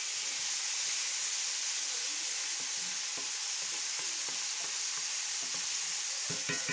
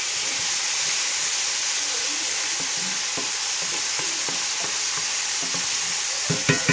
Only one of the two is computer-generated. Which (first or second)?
second